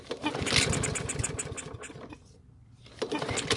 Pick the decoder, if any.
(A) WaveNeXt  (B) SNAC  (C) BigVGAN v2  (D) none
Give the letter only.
D